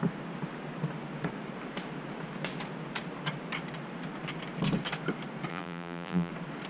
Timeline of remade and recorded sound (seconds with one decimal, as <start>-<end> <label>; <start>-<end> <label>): 0.0-5.5 recorded; 5.5-6.3 remade; 6.3-6.7 recorded